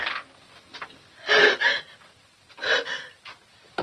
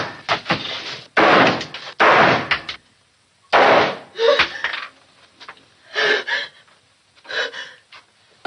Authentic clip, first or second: second